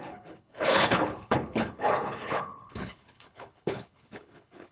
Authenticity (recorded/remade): remade